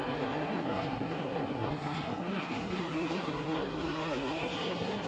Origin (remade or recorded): remade